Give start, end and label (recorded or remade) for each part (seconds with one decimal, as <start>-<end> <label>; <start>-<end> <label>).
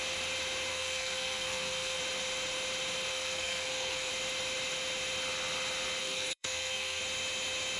0.0-0.7 recorded; 0.7-2.0 remade; 2.0-3.1 recorded; 3.1-4.1 remade; 4.1-6.0 recorded; 6.0-7.0 remade; 7.0-7.8 recorded